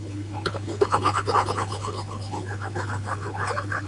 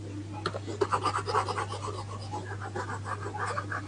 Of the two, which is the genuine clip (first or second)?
second